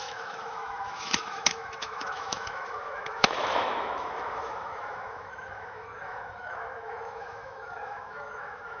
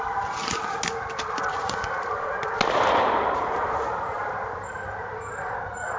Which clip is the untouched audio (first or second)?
second